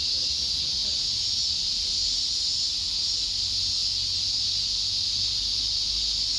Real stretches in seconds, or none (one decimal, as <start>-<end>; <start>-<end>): 0.0-6.4